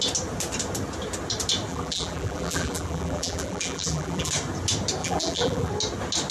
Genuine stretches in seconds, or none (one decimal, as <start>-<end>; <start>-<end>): 0.0-1.7; 4.3-5.0; 5.7-6.3

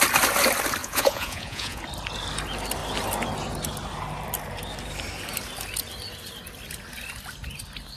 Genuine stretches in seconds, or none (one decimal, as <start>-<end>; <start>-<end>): 0.0-0.8; 1.8-8.0

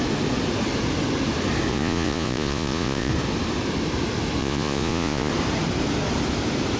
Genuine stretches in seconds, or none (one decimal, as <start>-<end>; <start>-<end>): 0.0-1.7; 3.1-4.4; 5.3-6.8

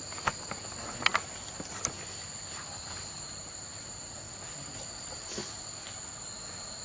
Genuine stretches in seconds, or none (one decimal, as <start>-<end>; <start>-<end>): 0.0-6.8